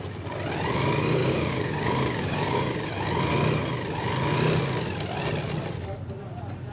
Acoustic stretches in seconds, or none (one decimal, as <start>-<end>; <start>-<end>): 0.0-1.2; 2.9-6.7